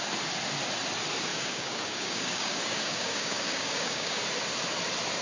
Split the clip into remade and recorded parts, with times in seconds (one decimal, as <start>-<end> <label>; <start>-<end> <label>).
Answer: 0.0-1.3 recorded; 1.3-4.2 remade; 4.2-5.2 recorded